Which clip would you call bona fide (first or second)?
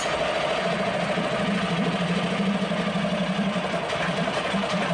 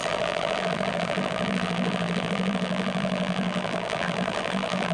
first